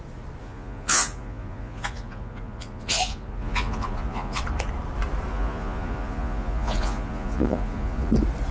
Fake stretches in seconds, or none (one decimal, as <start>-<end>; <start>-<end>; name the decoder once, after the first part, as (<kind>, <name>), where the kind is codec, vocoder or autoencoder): 0.4-4.4 (vocoder, Vocos); 5.3-8.1

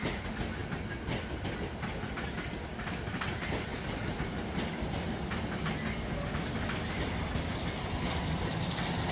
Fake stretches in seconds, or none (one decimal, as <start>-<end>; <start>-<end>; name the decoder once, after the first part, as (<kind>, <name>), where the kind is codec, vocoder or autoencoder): none

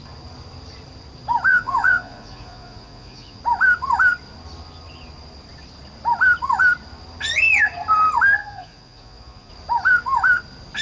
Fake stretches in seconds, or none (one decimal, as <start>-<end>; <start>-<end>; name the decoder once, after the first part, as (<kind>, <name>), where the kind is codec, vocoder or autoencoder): 1.5-3.4 (vocoder, Vocos); 8.4-9.5

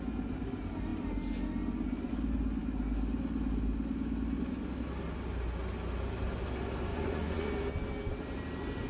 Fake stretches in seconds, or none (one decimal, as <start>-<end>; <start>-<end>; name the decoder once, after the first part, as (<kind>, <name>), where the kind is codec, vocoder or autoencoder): 6.9-7.5 (vocoder, Vocos)

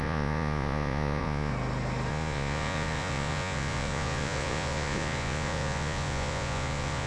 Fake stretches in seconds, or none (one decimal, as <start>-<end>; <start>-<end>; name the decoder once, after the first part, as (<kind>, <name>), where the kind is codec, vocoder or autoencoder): 0.0-1.5 (vocoder, Vocos); 2.1-7.1

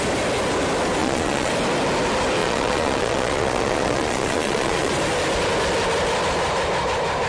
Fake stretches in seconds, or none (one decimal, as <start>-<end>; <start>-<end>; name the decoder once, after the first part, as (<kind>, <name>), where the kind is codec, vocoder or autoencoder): 1.0-1.5 (vocoder, Vocos); 2.4-4.9

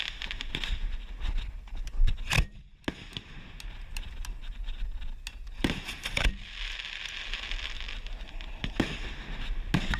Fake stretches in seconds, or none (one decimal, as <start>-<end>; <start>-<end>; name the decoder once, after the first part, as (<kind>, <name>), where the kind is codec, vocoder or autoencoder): none

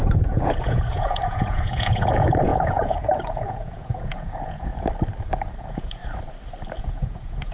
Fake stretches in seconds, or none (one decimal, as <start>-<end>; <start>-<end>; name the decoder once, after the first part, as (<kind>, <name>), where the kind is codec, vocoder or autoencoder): 0.0-4.7 (vocoder, Vocos); 5.6-6.0; 6.8-7.5